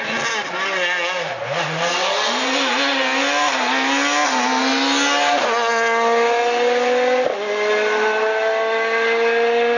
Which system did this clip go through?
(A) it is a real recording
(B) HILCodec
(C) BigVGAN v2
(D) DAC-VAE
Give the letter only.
A